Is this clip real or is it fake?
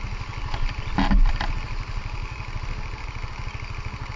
real